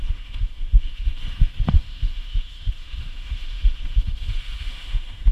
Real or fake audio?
fake